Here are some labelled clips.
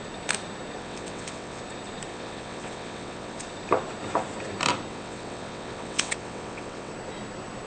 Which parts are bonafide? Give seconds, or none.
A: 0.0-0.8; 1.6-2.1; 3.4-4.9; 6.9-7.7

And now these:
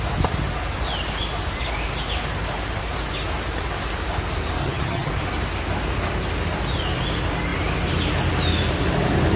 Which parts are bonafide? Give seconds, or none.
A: 0.0-4.6; 5.1-9.4

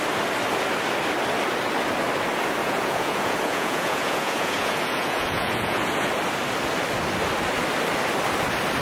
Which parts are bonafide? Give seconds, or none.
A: 0.0-2.6; 6.1-8.8

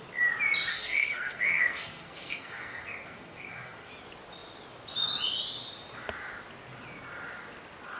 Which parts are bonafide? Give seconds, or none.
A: 0.0-0.7; 3.9-8.0

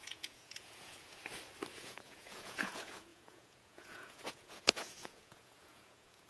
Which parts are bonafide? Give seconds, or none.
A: 1.2-1.7

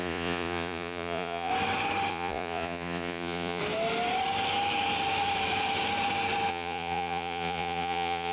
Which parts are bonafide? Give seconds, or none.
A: 1.5-2.1; 3.6-6.5

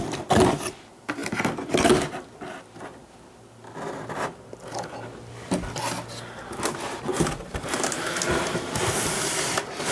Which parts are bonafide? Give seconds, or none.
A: 0.0-9.9